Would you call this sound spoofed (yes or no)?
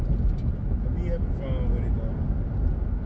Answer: no